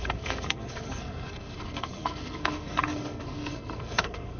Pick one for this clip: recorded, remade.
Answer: remade